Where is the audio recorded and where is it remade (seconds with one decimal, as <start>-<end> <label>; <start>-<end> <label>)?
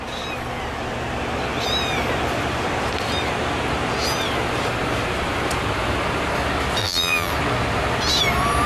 0.0-6.8 recorded; 6.8-7.3 remade; 7.3-8.7 recorded